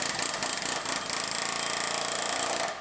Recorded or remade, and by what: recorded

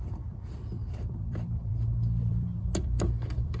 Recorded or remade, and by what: remade, vocoder, BigVGAN v2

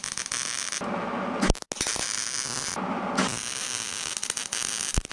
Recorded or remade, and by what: recorded